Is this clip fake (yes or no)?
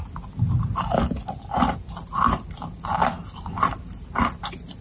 no